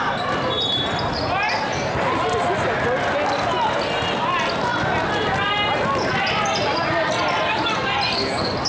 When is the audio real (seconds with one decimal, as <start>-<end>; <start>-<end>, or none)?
0.0-8.7